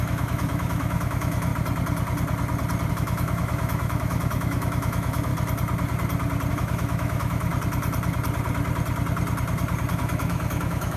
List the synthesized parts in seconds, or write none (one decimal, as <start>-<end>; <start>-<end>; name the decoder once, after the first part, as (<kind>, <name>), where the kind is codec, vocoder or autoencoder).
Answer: 0.0-1.5 (autoencoder, DAC-VAE); 2.9-5.3; 6.5-7.5; 9.9-11.0